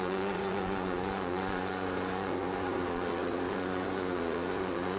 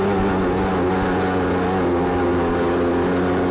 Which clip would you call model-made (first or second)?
first